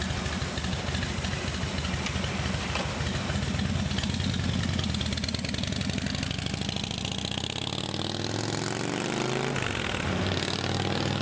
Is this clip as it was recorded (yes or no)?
yes